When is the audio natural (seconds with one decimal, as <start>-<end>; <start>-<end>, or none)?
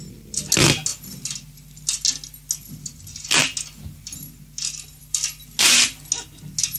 0.0-6.8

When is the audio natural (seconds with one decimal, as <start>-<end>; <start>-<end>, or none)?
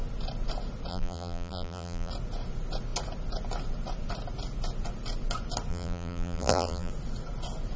0.0-0.9; 2.1-5.7; 6.9-7.8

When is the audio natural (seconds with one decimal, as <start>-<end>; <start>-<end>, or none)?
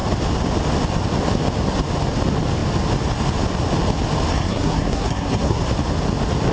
0.0-4.3; 5.6-6.5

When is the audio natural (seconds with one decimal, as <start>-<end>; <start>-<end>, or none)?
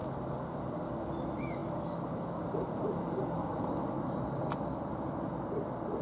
0.0-6.0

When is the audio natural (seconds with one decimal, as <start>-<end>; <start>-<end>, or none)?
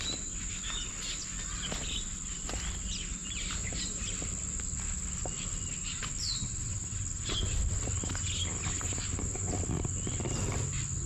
0.0-3.2; 4.0-11.1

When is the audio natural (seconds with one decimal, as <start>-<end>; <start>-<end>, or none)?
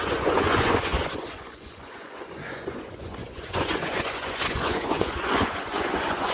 none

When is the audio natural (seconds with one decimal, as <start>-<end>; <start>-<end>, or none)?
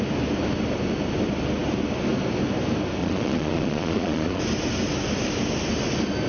0.0-3.0; 4.4-6.3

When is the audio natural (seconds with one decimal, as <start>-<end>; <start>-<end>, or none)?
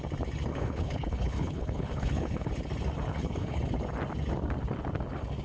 0.0-0.5; 2.5-3.1; 3.6-5.4